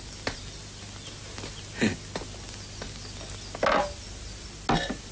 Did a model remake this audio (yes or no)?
no